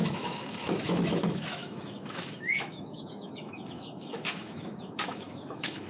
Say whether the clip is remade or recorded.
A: remade